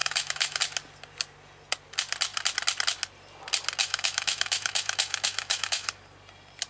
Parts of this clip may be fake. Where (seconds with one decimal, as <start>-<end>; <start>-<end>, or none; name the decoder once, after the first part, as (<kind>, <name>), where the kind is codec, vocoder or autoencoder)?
0.0-0.6 (autoencoder, DAC-VAE); 3.8-5.9